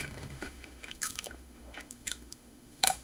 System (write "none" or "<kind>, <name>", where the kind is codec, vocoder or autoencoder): autoencoder, DAC-VAE